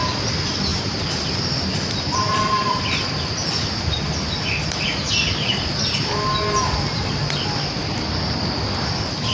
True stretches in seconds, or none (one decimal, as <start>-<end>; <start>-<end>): 0.0-0.7; 2.4-9.3